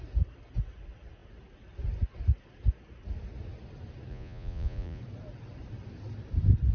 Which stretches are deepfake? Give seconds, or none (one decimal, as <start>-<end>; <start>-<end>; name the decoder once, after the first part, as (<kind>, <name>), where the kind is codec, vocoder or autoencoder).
4.1-5.0 (vocoder, Vocos)